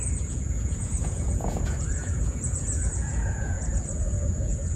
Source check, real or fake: fake